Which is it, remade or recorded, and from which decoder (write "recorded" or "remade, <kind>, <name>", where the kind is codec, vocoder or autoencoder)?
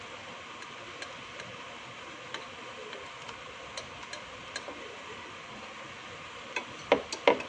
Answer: recorded